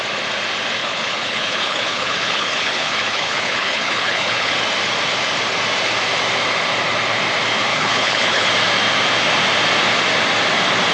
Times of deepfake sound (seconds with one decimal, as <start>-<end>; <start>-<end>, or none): 0.8-4.5; 7.7-8.5

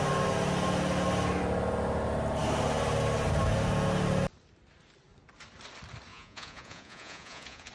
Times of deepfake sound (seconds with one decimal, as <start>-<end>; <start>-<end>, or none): 6.1-7.7

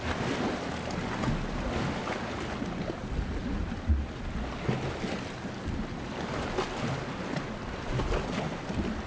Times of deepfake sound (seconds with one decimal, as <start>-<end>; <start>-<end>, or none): none

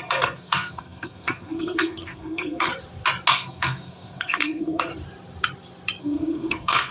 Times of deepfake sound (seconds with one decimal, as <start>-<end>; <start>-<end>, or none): 0.0-2.7; 3.3-4.9; 6.0-6.9